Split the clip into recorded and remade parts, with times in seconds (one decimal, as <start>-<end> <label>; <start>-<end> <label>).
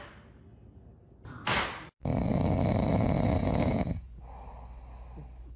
0.0-3.4 recorded; 3.4-4.2 remade; 4.2-5.6 recorded